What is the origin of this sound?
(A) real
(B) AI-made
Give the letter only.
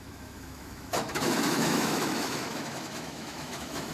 B